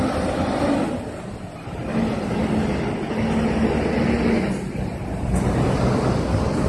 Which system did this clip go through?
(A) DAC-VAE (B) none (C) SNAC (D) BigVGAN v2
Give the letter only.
B